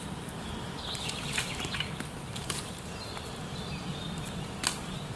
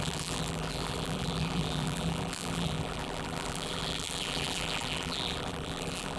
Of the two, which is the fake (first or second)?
second